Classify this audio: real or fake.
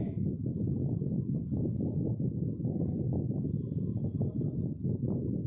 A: real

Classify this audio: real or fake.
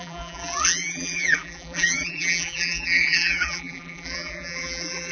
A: fake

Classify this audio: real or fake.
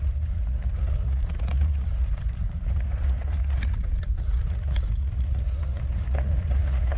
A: fake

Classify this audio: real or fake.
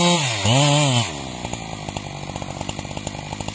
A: real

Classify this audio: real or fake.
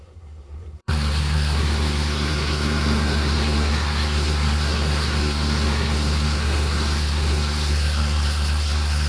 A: fake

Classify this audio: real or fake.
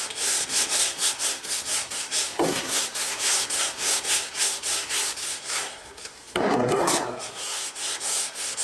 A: fake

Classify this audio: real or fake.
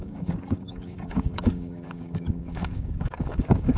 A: fake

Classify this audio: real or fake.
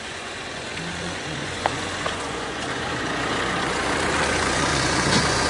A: fake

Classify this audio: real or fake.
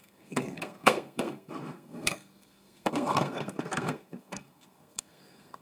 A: fake